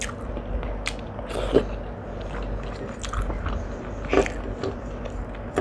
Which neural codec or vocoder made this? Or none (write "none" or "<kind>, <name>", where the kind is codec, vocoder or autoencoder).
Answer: none